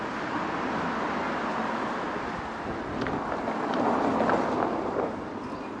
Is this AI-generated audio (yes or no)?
no